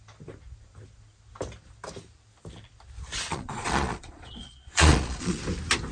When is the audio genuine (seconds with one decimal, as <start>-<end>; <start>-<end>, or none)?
0.0-3.3; 5.4-5.9